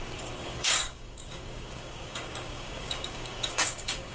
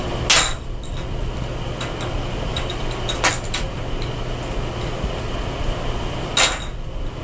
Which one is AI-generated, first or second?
first